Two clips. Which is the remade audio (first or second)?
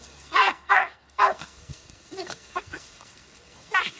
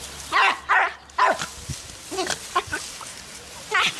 first